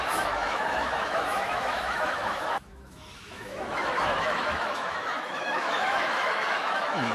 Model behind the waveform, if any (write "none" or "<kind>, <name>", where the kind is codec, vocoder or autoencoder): autoencoder, DAC-VAE